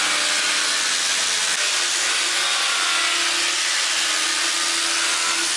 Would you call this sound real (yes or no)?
yes